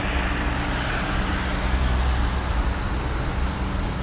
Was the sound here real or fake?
real